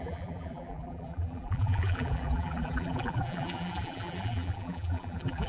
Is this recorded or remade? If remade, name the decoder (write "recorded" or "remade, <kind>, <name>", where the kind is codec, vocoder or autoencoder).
remade, vocoder, BigVGAN v2